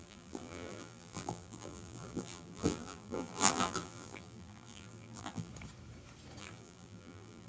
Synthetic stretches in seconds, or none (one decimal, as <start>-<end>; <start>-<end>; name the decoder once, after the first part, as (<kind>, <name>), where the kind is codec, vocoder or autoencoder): 0.0-5.5 (vocoder, BigVGAN v2); 6.4-7.5